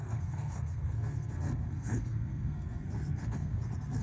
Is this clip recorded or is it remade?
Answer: remade